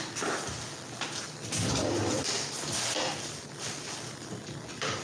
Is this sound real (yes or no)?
yes